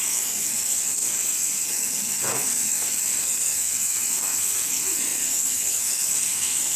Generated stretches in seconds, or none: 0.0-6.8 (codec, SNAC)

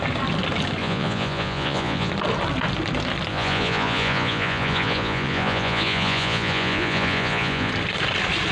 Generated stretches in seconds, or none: 0.8-2.1 (vocoder, Vocos); 3.3-7.7

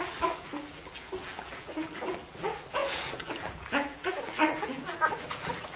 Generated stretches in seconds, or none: 0.0-5.8 (vocoder, BigVGAN v2)